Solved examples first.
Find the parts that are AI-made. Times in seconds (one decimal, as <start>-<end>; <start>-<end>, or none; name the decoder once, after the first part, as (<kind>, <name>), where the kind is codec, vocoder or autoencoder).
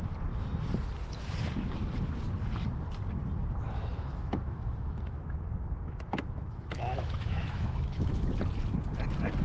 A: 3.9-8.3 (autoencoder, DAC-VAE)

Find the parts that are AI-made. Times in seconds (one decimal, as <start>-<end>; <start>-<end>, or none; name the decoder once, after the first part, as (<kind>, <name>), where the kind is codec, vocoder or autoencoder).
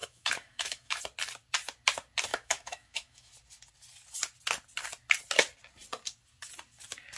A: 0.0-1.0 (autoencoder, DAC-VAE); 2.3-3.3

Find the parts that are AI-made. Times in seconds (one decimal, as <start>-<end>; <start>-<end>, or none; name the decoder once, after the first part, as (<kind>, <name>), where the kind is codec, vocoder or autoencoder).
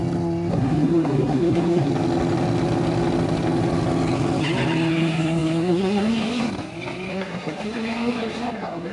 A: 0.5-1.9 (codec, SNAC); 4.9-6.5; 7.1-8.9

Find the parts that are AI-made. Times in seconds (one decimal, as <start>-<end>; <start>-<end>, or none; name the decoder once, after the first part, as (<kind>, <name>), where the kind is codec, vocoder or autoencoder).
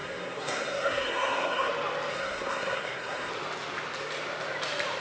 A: 0.0-1.7 (codec, SNAC); 2.1-3.3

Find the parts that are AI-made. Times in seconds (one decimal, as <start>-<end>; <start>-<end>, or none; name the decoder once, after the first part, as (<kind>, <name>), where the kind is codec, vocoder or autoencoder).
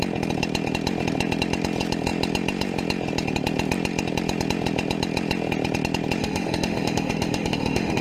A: 6.2-8.0 (autoencoder, DAC-VAE)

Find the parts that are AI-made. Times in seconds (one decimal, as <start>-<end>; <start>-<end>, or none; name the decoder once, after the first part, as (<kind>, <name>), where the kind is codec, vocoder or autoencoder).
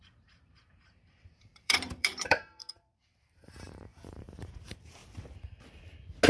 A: 0.0-5.0 (vocoder, BigVGAN v2)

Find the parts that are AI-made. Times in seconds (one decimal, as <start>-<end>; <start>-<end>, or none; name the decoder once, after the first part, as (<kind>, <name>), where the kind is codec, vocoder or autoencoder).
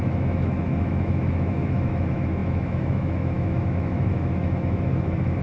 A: 0.0-5.4 (autoencoder, DAC-VAE)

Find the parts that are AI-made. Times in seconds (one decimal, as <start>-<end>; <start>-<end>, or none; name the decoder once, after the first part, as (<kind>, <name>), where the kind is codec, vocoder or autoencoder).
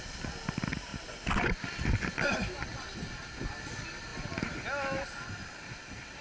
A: none